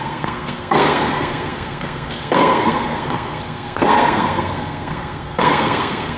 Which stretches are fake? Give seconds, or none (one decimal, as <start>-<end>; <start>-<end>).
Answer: 0.0-6.2